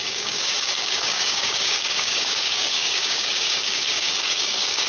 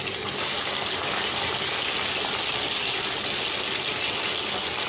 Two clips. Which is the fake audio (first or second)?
first